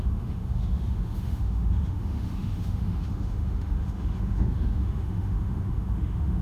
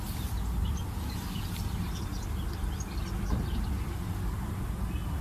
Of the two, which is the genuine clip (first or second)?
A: second